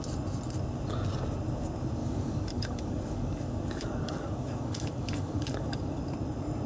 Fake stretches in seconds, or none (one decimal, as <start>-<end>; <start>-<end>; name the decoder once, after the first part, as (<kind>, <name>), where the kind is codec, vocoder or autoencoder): 2.0-6.0 (codec, DAC)